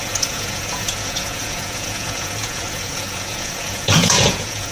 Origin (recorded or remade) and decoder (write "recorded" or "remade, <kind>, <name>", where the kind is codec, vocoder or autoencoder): remade, vocoder, Vocos